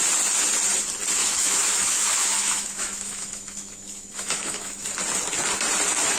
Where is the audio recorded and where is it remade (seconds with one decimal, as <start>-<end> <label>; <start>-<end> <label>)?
0.0-1.2 recorded; 1.2-4.9 remade; 4.9-6.2 recorded